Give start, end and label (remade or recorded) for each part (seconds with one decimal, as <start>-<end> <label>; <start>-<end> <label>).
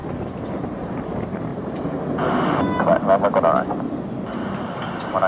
0.0-0.6 recorded; 0.6-1.5 remade; 1.5-4.7 recorded; 4.7-5.3 remade